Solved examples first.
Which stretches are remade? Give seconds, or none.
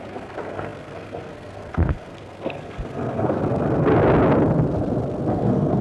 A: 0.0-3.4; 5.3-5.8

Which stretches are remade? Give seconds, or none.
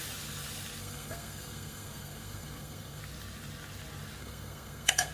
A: 0.8-3.0; 4.2-5.1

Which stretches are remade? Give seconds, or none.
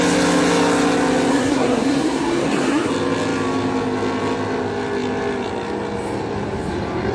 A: 1.3-2.9